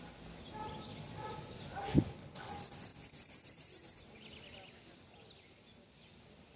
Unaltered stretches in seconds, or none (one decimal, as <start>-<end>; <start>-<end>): 0.0-1.9; 2.5-6.6